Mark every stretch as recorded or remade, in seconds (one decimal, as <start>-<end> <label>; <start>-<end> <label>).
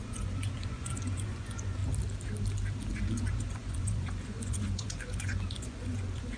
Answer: 0.0-1.8 remade; 1.8-2.9 recorded; 2.9-6.4 remade